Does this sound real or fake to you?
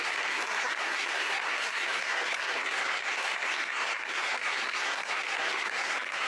fake